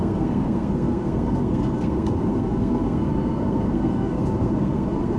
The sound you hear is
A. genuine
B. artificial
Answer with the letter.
B